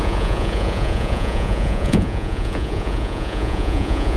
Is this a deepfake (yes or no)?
yes